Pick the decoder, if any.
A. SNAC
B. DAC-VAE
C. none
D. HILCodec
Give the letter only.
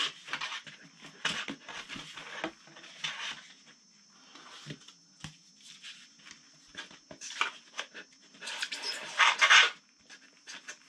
C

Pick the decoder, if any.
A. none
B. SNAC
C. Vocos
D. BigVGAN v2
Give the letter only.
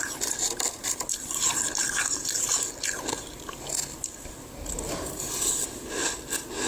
A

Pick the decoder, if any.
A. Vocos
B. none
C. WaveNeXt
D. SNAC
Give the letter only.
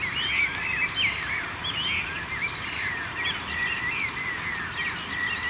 B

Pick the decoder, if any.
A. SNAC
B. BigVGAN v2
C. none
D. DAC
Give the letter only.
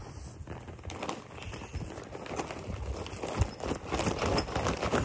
C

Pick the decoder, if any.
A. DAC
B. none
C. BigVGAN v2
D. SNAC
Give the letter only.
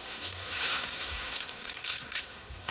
D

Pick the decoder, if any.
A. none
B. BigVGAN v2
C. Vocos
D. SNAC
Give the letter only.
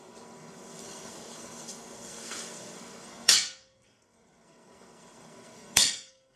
D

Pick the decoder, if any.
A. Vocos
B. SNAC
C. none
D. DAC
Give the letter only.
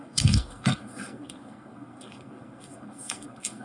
B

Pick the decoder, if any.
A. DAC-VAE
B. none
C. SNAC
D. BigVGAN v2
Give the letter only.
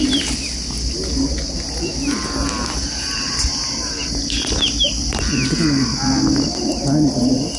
B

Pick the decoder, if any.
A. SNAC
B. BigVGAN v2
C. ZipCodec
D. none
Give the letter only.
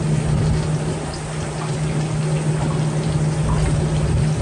D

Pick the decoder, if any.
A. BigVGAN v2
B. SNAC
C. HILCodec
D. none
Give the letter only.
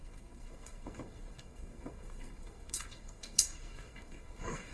B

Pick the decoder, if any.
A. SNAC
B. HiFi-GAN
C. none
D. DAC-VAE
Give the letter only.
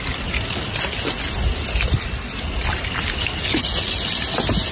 C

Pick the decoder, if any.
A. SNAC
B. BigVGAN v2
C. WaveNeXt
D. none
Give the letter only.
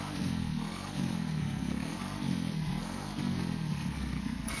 A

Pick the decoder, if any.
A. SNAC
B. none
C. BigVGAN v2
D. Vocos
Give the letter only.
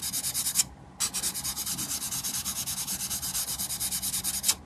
B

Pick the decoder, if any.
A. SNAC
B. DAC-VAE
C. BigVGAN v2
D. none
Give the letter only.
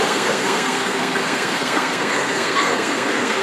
A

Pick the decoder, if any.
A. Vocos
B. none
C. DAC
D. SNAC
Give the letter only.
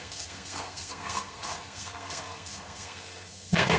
D